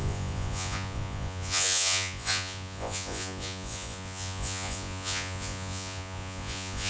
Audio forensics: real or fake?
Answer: fake